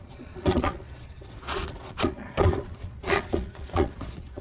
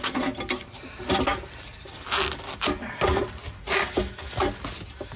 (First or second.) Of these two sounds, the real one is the second